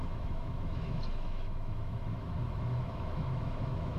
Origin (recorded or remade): remade